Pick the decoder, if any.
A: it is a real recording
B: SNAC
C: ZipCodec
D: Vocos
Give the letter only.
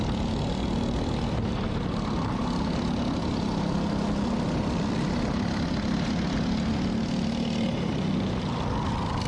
A